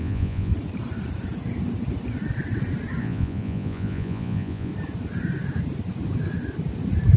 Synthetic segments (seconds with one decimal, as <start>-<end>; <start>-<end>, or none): 0.0-0.5; 3.0-4.7